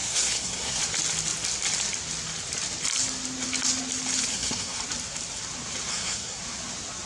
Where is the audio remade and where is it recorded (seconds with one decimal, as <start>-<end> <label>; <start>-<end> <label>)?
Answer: 0.0-0.8 remade; 0.8-4.3 recorded; 4.3-4.8 remade; 4.8-5.9 recorded; 5.9-6.4 remade; 6.4-7.1 recorded